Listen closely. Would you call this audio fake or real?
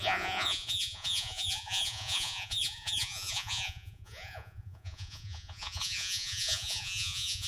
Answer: fake